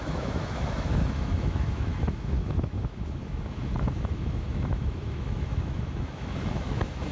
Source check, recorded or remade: remade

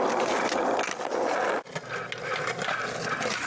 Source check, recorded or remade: recorded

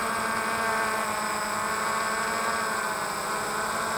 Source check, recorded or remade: recorded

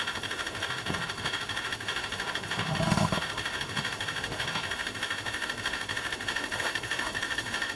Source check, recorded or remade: remade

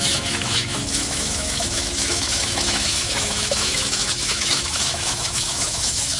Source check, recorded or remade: remade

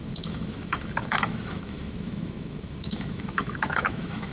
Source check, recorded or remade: remade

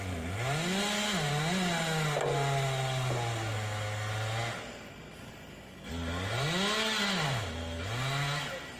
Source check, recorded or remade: recorded